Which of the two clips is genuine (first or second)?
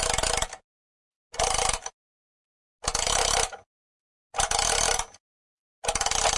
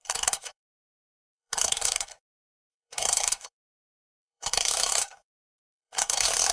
first